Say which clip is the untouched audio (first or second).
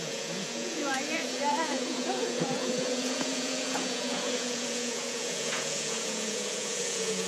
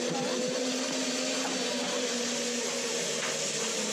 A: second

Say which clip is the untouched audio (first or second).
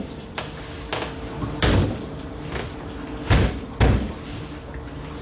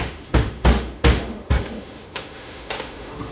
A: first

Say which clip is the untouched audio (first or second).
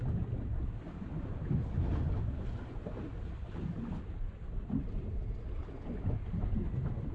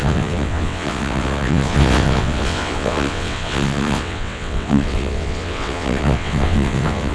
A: first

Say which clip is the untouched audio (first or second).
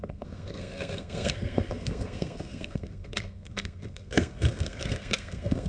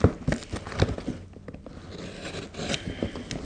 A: second